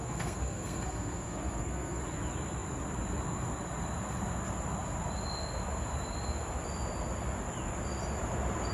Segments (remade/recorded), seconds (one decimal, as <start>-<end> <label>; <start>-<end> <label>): 0.0-2.0 remade; 2.0-8.7 recorded